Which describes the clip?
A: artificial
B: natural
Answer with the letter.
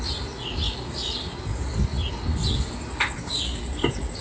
B